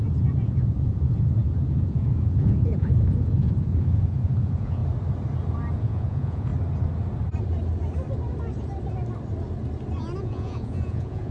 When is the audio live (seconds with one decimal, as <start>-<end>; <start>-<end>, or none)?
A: 4.8-5.8; 6.5-10.2